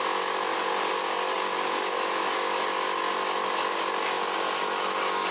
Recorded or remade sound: remade